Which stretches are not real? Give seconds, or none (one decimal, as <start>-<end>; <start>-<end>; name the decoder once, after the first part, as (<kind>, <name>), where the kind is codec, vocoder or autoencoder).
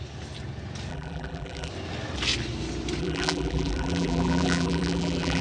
0.9-1.7 (vocoder, BigVGAN v2); 3.0-5.4